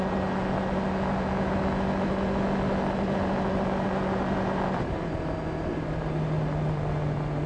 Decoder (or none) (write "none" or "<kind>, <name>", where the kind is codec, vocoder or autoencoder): none